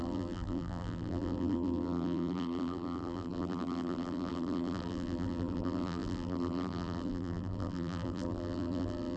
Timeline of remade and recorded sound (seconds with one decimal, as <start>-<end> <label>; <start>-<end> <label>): 0.0-9.2 remade